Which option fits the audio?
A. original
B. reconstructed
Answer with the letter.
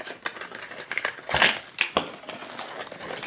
A